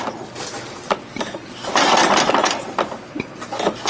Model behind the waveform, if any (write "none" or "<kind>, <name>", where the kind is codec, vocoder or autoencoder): none